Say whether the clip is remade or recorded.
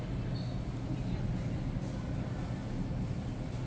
recorded